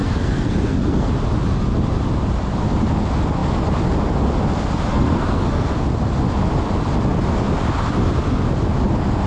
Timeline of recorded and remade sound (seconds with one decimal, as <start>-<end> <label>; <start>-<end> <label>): 0.0-1.1 remade; 1.1-4.9 recorded; 4.9-5.7 remade; 5.7-9.3 recorded